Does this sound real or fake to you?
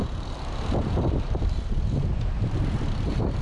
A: fake